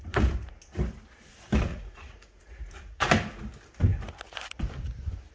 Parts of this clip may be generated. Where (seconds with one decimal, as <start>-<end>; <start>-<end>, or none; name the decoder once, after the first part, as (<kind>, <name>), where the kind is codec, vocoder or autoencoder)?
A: 1.7-3.1 (vocoder, Vocos)